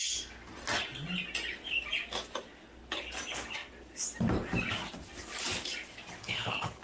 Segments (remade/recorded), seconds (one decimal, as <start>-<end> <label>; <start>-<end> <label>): 0.0-6.2 recorded; 6.2-6.8 remade